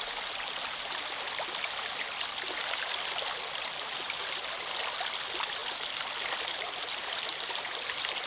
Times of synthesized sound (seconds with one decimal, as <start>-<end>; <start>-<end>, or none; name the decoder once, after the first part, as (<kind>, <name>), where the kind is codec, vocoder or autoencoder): none